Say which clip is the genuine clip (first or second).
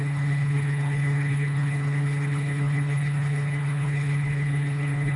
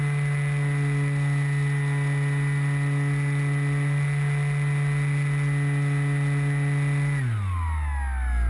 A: second